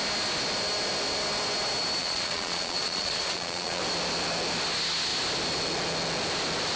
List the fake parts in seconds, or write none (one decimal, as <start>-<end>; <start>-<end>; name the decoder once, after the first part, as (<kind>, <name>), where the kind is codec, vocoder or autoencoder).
2.0-3.8 (vocoder, Vocos)